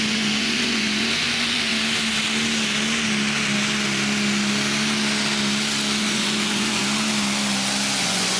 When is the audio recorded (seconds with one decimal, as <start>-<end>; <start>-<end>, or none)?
1.7-6.0; 6.8-8.0